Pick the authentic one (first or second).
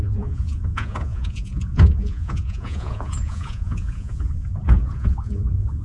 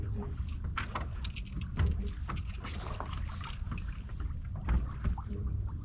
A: second